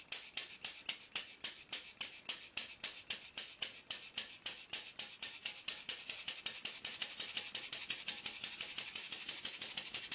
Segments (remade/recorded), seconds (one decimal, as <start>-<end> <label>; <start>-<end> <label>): 0.0-5.4 recorded; 5.4-6.4 remade; 6.4-10.1 recorded